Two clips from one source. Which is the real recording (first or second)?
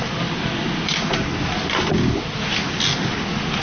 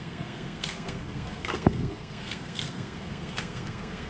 first